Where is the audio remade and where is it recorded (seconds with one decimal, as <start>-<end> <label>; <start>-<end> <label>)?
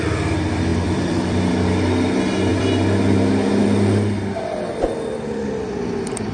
0.0-0.7 recorded; 0.7-1.5 remade; 1.5-2.5 recorded; 2.5-3.1 remade; 3.1-6.3 recorded